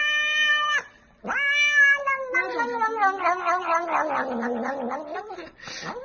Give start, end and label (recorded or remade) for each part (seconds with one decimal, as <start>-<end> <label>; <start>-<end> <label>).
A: 0.0-6.0 recorded